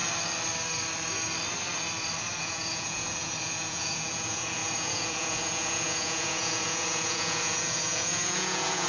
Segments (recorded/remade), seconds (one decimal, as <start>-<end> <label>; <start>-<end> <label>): 0.0-2.4 recorded; 2.4-8.9 remade